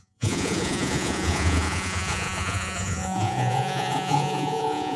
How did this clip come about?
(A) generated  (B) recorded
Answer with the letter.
A